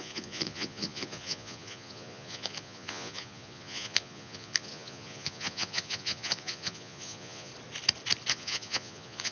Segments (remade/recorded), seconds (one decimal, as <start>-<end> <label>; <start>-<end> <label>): 0.0-7.5 remade; 7.5-8.3 recorded; 8.3-9.3 remade